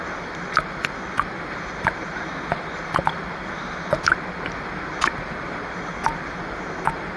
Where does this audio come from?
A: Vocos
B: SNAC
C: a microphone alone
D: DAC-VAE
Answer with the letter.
C